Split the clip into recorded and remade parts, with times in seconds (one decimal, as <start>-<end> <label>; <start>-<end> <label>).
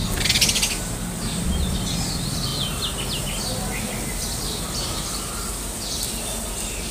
0.0-6.9 recorded